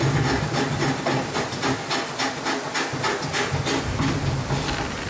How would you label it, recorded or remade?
recorded